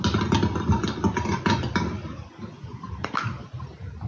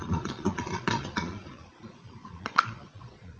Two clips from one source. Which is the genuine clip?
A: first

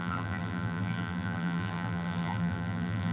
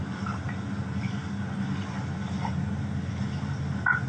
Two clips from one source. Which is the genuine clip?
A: second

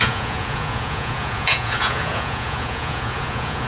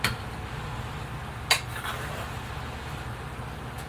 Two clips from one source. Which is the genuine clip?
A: second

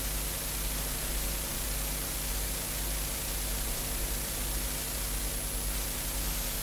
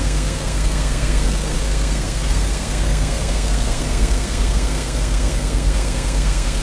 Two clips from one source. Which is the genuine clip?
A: first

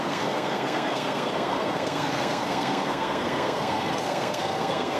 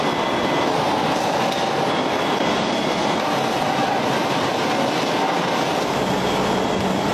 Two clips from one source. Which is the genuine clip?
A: second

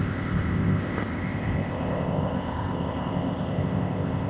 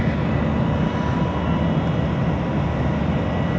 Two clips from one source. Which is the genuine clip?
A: second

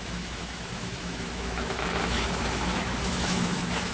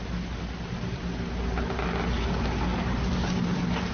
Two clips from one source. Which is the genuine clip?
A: second